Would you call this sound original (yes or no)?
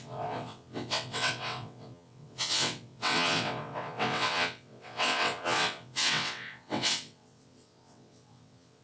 no